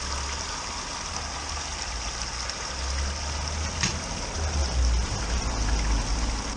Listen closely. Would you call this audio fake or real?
real